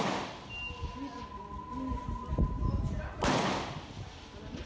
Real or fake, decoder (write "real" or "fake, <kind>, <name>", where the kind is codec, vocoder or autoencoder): real